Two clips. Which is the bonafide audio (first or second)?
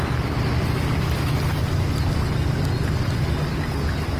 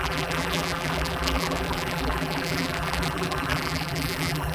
first